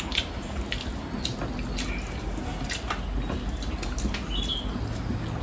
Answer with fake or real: real